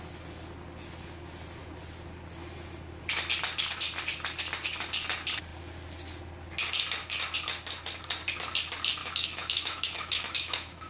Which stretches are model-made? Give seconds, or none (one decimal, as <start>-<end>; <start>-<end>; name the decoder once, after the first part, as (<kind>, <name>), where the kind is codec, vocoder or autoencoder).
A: 9.0-10.9 (autoencoder, DAC-VAE)